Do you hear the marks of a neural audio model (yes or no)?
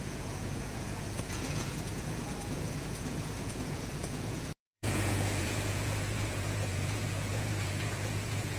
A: yes